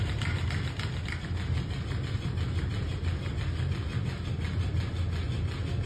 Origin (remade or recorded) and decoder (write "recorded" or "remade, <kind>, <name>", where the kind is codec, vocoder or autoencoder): recorded